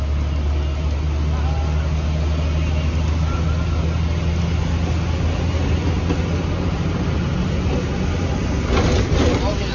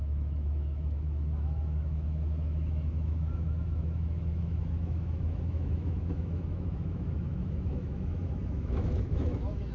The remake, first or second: second